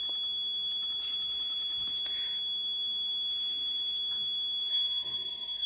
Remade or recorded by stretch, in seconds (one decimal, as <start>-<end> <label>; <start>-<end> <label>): 0.0-4.7 recorded; 4.7-5.7 remade